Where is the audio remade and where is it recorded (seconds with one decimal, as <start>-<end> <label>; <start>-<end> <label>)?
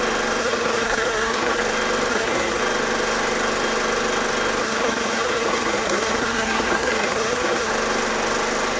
0.0-0.4 recorded; 0.4-1.6 remade; 1.6-2.1 recorded; 2.1-2.6 remade; 2.6-4.6 recorded; 4.6-7.7 remade; 7.7-8.8 recorded